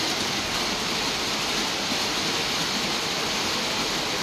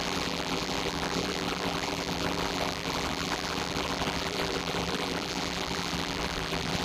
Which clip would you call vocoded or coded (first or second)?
second